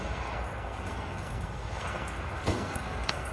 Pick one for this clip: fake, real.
fake